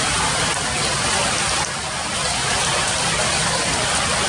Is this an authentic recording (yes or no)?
yes